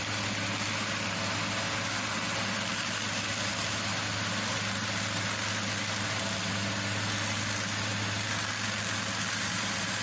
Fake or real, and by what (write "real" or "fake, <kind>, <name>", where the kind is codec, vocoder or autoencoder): real